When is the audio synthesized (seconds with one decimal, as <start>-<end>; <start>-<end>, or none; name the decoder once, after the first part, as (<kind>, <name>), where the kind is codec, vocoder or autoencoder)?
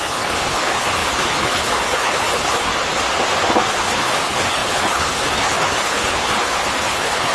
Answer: 0.0-2.7 (codec, HILCodec); 3.7-7.3